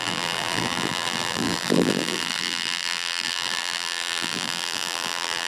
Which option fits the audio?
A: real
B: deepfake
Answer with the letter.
B